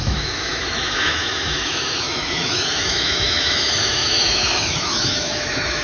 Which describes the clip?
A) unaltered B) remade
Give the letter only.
B